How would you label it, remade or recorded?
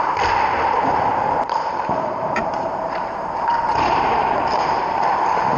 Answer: remade